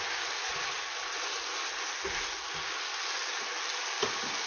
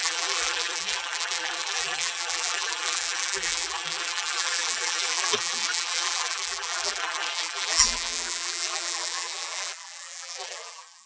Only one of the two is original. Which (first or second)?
first